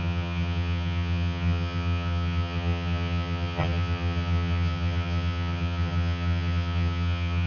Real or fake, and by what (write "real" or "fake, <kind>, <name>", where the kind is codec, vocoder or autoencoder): fake, vocoder, HiFi-GAN